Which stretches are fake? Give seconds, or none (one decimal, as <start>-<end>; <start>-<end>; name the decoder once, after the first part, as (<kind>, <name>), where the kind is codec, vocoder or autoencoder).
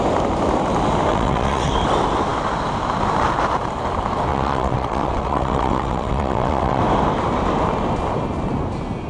1.1-1.7 (vocoder, WaveNeXt); 4.3-6.8